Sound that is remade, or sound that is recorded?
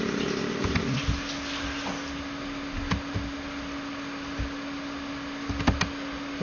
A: recorded